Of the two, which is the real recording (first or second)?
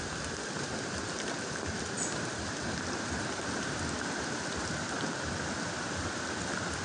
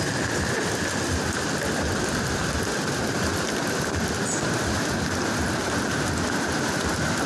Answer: second